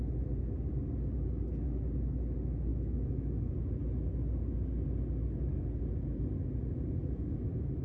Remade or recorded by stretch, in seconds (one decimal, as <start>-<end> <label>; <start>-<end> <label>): 0.0-2.7 recorded; 2.7-3.5 remade; 3.5-7.8 recorded